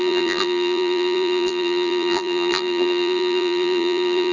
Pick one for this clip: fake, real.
fake